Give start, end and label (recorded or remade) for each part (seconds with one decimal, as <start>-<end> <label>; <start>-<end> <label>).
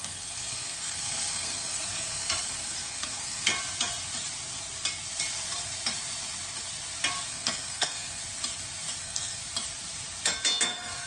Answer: 0.0-3.5 remade; 3.5-7.3 recorded; 7.3-8.2 remade; 8.2-9.0 recorded; 9.0-9.4 remade; 9.4-10.6 recorded; 10.6-11.1 remade